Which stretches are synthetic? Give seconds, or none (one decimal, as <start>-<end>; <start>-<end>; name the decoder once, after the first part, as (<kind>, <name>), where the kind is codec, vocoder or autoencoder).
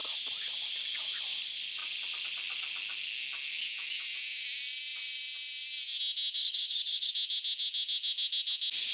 6.4-7.1 (vocoder, HiFi-GAN)